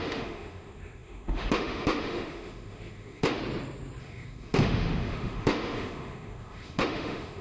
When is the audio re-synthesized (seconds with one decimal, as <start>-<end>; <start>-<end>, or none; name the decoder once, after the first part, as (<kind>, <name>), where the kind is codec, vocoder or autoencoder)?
0.0-3.4 (autoencoder, DAC-VAE); 4.0-7.4